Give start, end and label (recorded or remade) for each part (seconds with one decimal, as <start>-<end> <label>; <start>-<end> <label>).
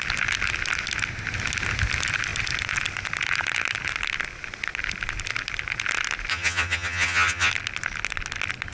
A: 0.0-6.3 recorded; 6.3-7.5 remade; 7.5-8.7 recorded